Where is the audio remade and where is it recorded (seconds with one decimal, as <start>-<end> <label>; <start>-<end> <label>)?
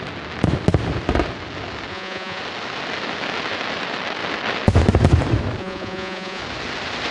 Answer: 0.0-1.9 recorded; 1.9-2.4 remade; 2.4-5.6 recorded; 5.6-6.4 remade; 6.4-7.1 recorded